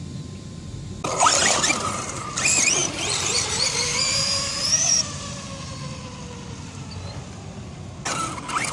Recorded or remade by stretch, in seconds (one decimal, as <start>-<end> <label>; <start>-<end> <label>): 0.0-1.4 recorded; 1.4-2.3 remade; 2.3-2.8 recorded; 2.8-5.4 remade; 5.4-8.7 recorded